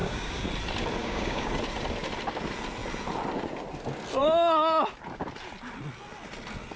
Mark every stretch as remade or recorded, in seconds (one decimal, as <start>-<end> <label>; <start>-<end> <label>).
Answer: 0.0-0.5 remade; 0.5-1.0 recorded; 1.0-1.5 remade; 1.5-6.8 recorded